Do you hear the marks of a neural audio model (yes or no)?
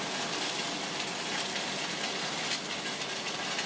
no